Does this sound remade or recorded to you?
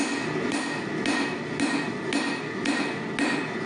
recorded